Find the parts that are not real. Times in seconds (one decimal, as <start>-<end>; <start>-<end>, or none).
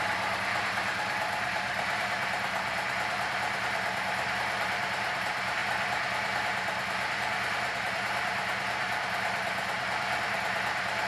0.0-5.6; 7.9-11.1